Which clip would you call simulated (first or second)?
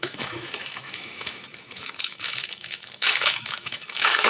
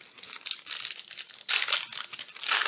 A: first